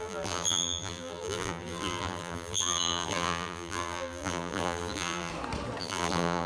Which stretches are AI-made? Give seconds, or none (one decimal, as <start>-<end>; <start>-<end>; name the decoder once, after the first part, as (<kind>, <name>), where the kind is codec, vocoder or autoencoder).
0.0-5.3 (vocoder, BigVGAN v2); 5.8-6.5